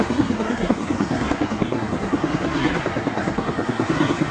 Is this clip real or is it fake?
fake